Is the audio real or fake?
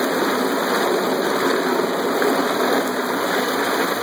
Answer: real